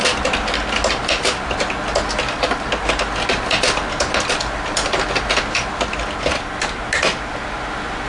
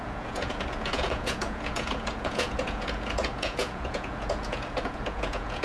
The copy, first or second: second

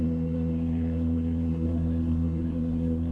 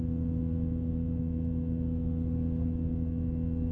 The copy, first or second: first